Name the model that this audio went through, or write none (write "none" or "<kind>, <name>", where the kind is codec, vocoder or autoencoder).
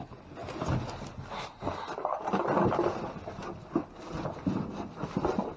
none